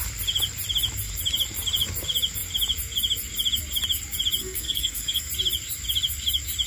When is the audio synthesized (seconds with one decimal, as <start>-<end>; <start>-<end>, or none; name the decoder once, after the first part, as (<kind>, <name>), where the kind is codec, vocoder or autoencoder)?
4.4-5.3 (codec, SNAC)